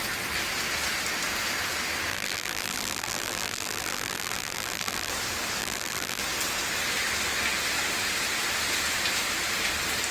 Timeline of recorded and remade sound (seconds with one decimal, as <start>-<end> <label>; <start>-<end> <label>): 0.0-2.1 recorded; 2.1-5.1 remade; 5.1-5.6 recorded; 5.6-6.2 remade; 6.2-10.1 recorded